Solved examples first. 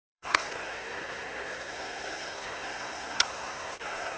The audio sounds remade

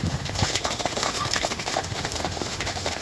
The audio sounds remade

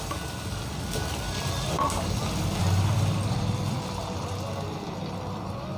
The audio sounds recorded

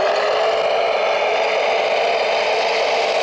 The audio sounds recorded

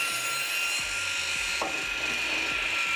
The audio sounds recorded